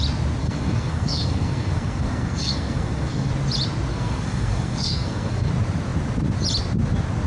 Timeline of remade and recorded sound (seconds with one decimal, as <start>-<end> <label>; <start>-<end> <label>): 0.0-0.4 recorded; 0.4-3.3 remade; 3.3-3.9 recorded; 3.9-5.5 remade; 5.5-7.3 recorded